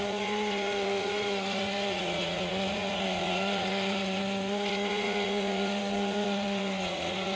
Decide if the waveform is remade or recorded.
remade